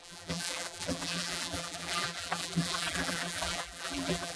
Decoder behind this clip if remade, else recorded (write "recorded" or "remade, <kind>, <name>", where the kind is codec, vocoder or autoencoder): remade, vocoder, BigVGAN v2